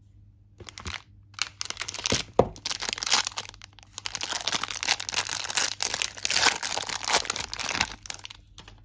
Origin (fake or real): real